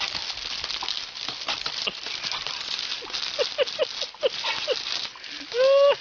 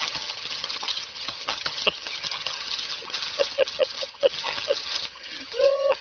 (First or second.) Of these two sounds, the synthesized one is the second